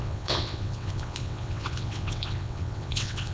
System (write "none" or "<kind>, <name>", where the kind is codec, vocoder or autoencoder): vocoder, WaveNeXt